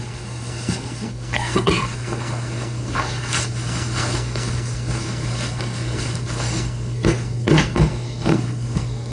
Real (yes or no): no